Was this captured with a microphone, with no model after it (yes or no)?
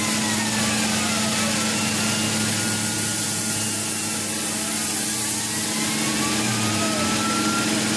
yes